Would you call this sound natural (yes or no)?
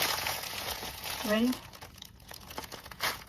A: no